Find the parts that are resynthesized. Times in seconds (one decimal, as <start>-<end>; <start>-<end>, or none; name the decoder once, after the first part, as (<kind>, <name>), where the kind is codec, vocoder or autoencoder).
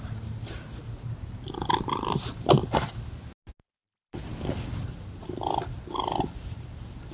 none